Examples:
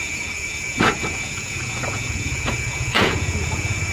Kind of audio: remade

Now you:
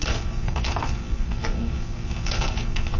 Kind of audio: remade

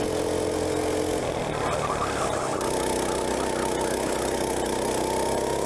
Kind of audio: recorded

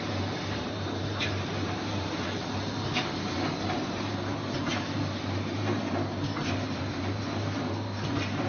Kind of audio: remade